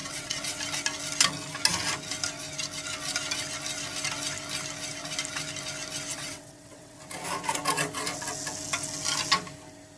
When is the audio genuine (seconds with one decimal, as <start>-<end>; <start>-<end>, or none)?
0.6-6.1; 7.0-10.0